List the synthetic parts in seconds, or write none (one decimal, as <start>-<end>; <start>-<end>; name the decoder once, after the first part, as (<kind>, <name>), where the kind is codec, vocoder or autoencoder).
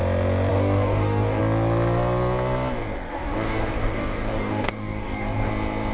0.5-1.4 (codec, DAC); 3.1-5.5